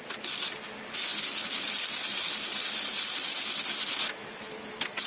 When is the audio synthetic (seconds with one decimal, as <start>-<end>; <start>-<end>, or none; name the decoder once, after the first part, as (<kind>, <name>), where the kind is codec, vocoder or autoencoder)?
none